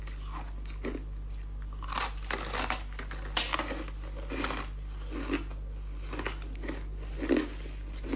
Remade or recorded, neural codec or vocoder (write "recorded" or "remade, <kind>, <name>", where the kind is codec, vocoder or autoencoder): recorded